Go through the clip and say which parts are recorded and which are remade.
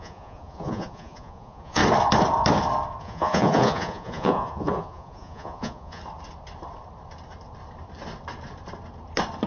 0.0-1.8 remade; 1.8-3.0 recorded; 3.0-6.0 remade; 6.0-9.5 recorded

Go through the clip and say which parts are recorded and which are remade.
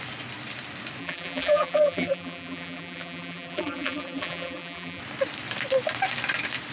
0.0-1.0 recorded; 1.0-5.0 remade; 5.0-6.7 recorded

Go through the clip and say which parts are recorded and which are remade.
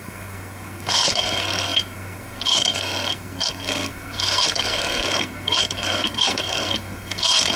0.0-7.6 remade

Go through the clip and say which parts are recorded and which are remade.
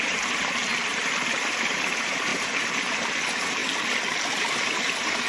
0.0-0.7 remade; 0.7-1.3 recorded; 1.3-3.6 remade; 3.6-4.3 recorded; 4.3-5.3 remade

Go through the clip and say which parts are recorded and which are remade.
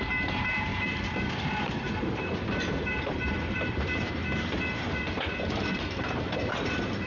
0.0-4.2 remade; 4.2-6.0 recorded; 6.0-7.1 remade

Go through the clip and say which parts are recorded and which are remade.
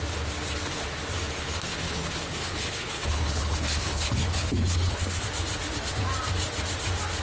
0.0-1.7 recorded; 1.7-5.2 remade; 5.2-7.2 recorded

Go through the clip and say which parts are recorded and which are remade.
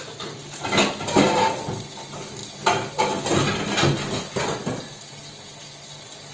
0.0-6.3 recorded